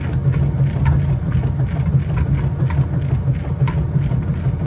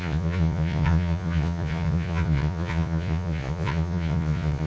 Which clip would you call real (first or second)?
first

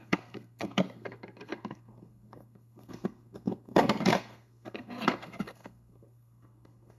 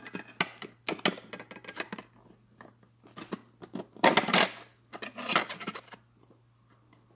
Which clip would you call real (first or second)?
second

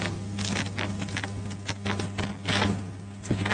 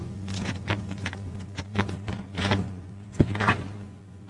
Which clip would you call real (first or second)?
first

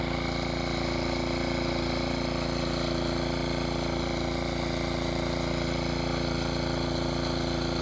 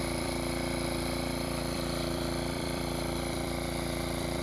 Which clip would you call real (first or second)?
first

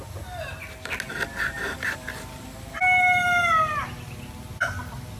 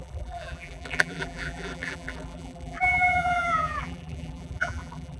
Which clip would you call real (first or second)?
first